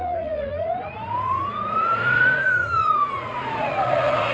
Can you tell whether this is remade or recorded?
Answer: remade